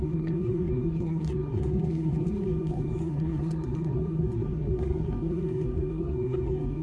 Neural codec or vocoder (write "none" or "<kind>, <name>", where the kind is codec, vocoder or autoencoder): codec, SNAC